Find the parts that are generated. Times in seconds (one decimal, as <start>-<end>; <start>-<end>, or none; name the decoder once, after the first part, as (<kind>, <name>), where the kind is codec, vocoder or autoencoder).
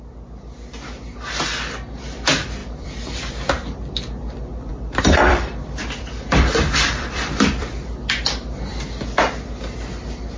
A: 2.6-3.3 (vocoder, BigVGAN v2); 4.7-7.7